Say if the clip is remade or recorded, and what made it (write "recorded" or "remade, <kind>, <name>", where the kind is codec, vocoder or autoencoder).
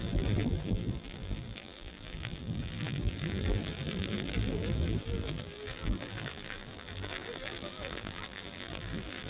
remade, vocoder, BigVGAN v2